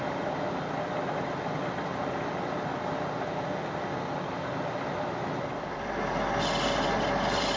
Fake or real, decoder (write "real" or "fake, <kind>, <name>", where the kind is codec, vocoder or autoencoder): real